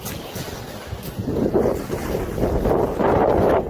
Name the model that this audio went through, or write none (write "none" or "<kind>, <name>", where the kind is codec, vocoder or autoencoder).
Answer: none